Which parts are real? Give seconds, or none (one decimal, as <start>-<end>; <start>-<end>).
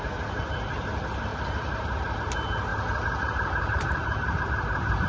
0.0-1.3; 2.1-2.7; 4.4-5.1